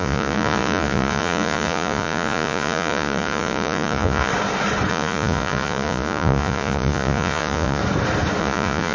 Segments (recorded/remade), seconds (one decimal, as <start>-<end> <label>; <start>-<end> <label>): 0.0-4.3 remade; 4.3-4.9 recorded; 4.9-7.8 remade; 7.8-8.4 recorded; 8.4-8.9 remade